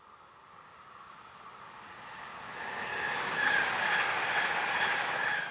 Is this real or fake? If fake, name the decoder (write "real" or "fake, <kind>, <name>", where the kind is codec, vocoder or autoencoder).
real